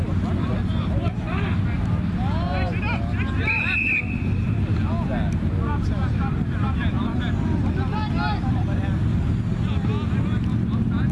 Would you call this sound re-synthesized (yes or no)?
no